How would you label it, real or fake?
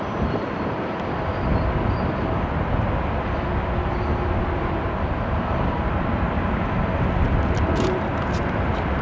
real